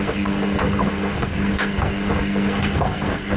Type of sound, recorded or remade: remade